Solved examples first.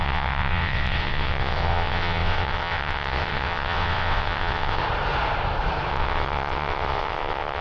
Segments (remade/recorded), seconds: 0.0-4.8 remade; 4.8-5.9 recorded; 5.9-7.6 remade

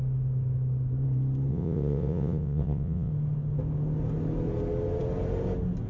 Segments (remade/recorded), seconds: 0.0-1.5 recorded; 1.5-3.1 remade; 3.1-5.9 recorded